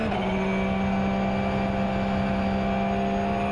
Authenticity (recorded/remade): recorded